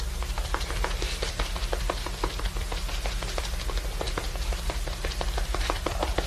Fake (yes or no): no